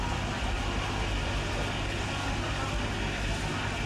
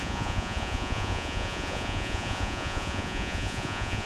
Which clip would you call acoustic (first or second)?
first